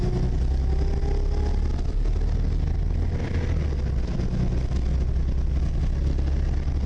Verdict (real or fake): real